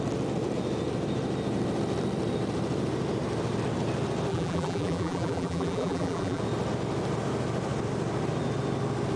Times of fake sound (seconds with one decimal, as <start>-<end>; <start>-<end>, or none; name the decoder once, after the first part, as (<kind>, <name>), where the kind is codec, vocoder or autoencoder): 4.3-6.4 (vocoder, BigVGAN v2)